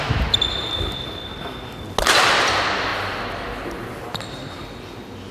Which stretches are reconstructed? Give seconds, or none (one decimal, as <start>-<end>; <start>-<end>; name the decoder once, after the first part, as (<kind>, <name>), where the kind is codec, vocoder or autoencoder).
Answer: none